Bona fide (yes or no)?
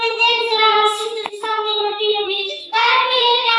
no